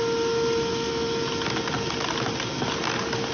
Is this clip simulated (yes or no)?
no